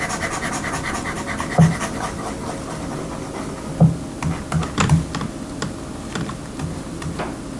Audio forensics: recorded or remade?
recorded